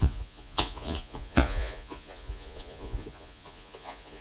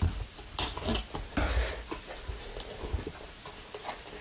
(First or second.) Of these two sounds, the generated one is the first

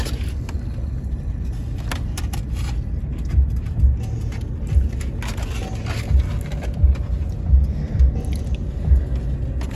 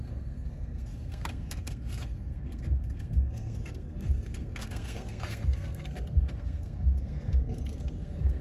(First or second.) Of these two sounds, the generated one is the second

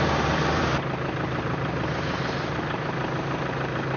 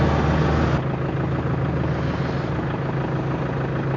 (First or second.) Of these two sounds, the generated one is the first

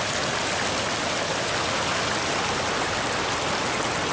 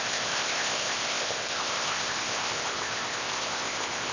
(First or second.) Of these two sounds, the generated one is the second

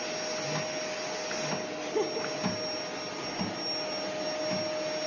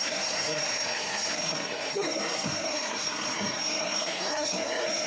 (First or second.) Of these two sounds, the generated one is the second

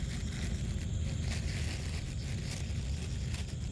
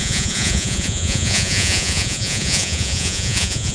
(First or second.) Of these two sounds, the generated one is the second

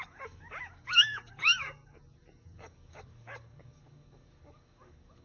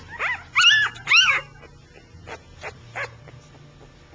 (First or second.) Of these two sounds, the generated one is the first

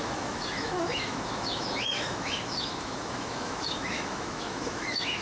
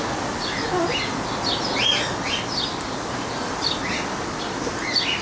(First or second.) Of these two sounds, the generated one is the first